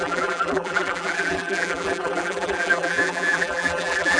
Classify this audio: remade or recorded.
remade